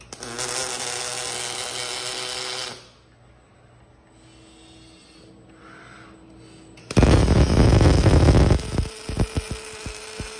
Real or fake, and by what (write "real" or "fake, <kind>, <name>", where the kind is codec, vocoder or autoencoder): real